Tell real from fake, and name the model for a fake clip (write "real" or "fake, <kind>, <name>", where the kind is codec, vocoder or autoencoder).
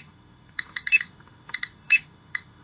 fake, autoencoder, DAC-VAE